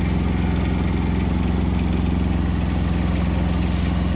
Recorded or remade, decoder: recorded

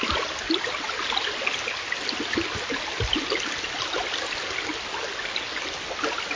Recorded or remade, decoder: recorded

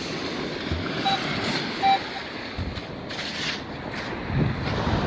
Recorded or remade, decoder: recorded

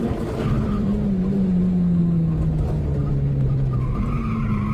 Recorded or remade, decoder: recorded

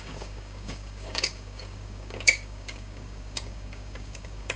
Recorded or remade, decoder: remade, codec, DAC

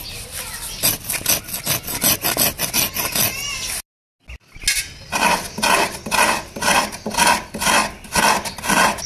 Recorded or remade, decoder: recorded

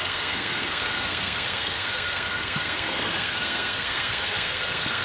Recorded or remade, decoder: remade, codec, SNAC